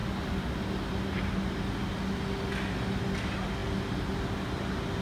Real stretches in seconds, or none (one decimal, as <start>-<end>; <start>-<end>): 0.0-5.0